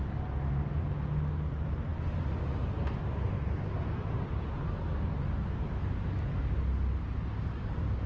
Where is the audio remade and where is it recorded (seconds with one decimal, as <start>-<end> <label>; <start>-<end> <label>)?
0.0-8.1 recorded